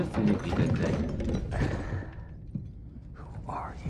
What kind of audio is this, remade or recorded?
recorded